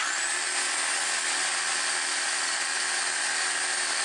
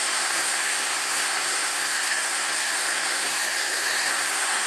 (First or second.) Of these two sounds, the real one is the first